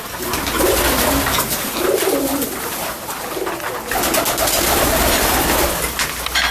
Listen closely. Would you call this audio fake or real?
real